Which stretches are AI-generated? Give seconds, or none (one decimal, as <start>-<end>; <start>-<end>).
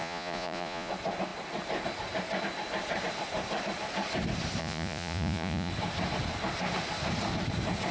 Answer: 0.0-0.9; 4.6-5.7